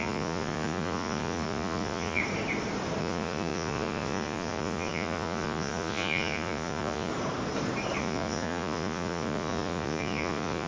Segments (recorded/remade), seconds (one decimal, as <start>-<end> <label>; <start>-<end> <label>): 0.0-2.2 remade; 2.2-3.0 recorded; 3.0-7.1 remade; 7.1-8.0 recorded; 8.0-10.7 remade